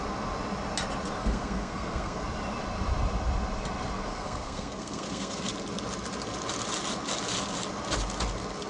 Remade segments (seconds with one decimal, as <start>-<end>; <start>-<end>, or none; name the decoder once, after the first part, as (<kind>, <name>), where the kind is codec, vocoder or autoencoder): 1.2-2.2 (codec, SNAC); 4.1-5.5